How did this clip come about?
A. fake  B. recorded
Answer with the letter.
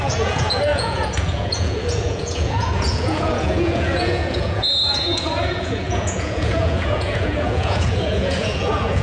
A